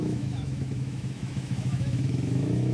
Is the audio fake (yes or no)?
yes